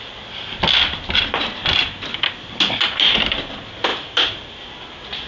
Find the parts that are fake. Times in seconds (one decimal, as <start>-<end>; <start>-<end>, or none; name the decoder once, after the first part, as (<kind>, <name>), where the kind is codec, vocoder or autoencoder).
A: 3.9-4.7 (vocoder, BigVGAN v2)